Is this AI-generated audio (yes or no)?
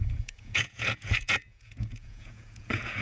yes